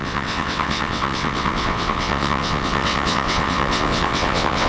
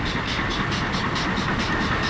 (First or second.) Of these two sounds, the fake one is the first